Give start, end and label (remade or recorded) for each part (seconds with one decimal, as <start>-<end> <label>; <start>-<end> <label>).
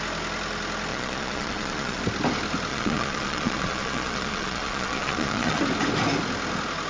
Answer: 0.0-0.9 recorded; 0.9-2.0 remade; 2.0-2.7 recorded; 2.7-5.6 remade; 5.6-6.9 recorded